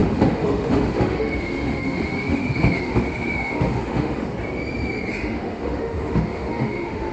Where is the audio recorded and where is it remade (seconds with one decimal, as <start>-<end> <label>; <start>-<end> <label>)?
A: 0.0-4.3 remade; 4.3-5.1 recorded; 5.1-7.1 remade